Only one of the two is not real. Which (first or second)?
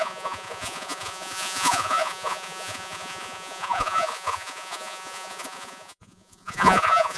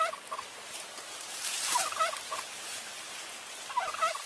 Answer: first